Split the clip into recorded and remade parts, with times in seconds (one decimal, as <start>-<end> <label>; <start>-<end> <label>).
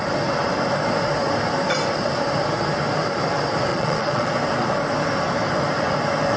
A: 0.0-3.7 recorded; 3.7-4.3 remade; 4.3-6.4 recorded